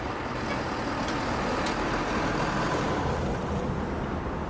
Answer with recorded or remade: recorded